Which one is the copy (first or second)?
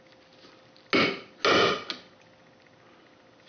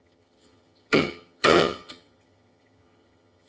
second